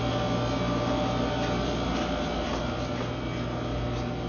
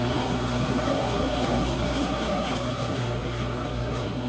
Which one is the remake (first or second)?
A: second